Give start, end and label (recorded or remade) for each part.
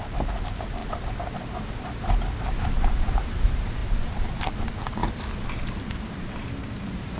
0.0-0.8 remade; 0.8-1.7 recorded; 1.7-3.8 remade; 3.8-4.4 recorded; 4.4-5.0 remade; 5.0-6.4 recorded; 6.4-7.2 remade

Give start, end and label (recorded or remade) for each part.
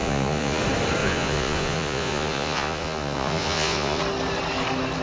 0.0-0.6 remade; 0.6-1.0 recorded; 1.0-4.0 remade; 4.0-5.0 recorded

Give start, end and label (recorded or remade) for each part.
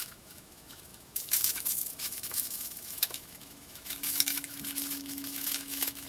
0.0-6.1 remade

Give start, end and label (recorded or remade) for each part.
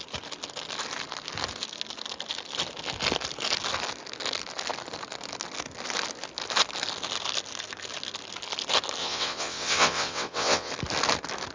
0.0-9.0 recorded; 9.0-10.7 remade; 10.7-11.5 recorded